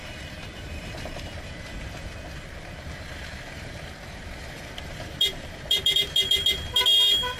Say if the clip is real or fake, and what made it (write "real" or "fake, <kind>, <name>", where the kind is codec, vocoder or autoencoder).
fake, vocoder, BigVGAN v2